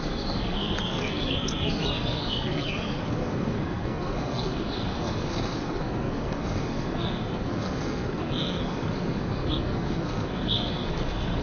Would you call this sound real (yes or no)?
no